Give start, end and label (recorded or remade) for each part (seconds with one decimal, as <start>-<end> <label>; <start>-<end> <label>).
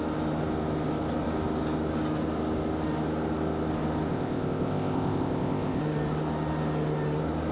0.0-4.1 recorded; 4.1-5.8 remade; 5.8-7.5 recorded